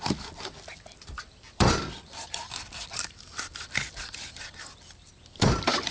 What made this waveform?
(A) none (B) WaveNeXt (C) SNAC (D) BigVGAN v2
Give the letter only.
D